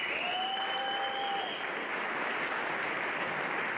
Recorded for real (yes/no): yes